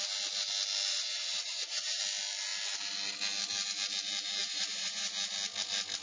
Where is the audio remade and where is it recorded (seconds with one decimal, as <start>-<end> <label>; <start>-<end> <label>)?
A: 0.0-0.9 recorded; 0.9-2.0 remade; 2.0-4.4 recorded; 4.4-5.1 remade; 5.1-6.0 recorded